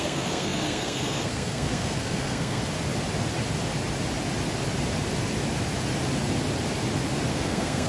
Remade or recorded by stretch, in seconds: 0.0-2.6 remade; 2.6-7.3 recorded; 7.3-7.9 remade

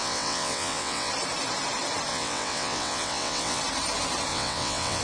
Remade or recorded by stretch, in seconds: 0.0-1.1 remade; 1.1-2.1 recorded; 2.1-3.6 remade; 3.6-4.3 recorded; 4.3-5.0 remade

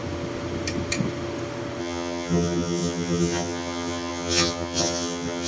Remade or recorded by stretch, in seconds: 0.0-1.8 recorded; 1.8-5.5 remade

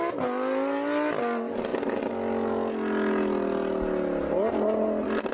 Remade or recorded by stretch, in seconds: 0.0-5.3 recorded

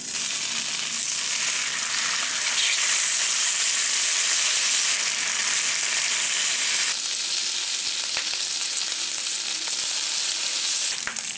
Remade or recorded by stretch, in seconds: 0.0-11.4 recorded

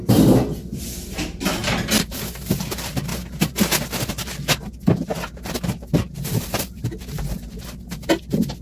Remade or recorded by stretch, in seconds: 0.0-3.1 remade; 3.1-4.7 recorded; 4.7-8.6 remade

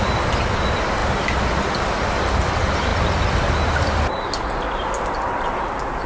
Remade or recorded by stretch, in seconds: 0.0-6.1 recorded

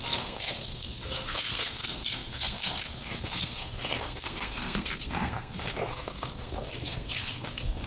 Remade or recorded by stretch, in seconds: 0.0-7.9 remade